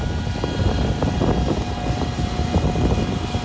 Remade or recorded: recorded